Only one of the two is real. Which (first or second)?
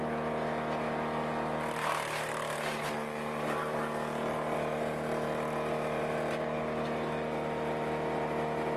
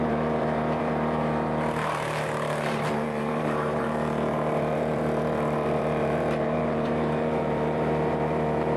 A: first